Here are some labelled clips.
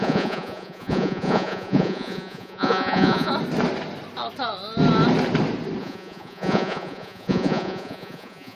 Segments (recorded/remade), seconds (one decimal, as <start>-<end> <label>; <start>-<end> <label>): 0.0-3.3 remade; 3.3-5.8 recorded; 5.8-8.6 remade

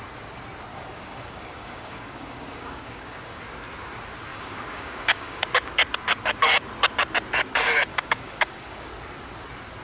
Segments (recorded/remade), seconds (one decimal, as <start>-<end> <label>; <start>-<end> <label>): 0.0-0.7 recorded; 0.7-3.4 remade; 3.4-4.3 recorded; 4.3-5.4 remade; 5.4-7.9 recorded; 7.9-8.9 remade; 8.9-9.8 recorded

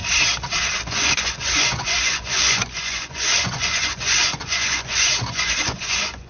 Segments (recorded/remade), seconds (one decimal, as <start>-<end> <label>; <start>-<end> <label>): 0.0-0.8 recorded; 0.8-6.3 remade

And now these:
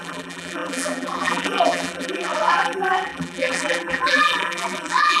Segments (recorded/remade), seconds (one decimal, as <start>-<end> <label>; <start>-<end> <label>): 0.0-5.2 remade

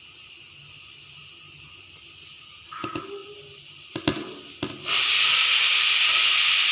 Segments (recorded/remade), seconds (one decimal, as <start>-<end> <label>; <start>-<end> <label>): 0.0-3.2 recorded; 3.2-3.9 remade; 3.9-6.7 recorded

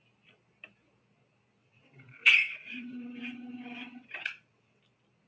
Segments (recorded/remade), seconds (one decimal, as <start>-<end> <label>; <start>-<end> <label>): 0.0-1.6 recorded; 1.6-4.8 remade; 4.8-5.3 recorded

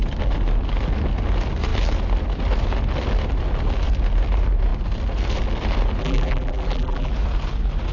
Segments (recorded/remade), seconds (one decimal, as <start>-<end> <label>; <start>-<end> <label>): 0.0-6.0 recorded; 6.0-7.1 remade; 7.1-7.9 recorded